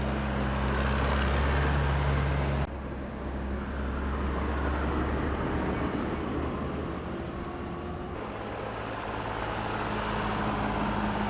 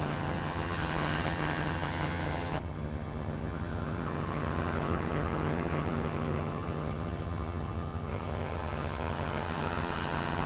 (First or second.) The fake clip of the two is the second